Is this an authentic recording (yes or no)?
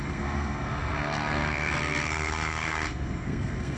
no